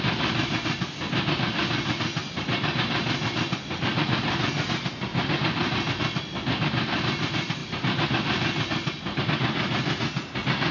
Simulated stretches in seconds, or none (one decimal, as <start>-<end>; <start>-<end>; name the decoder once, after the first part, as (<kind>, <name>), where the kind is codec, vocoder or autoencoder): 5.1-5.9 (vocoder, BigVGAN v2)